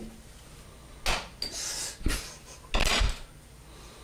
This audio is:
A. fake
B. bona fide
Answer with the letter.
B